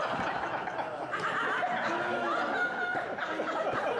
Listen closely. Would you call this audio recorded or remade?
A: recorded